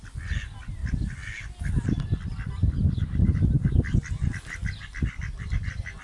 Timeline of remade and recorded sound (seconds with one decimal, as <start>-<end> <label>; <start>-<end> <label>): 0.0-6.0 recorded